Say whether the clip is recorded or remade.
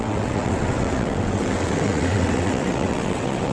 remade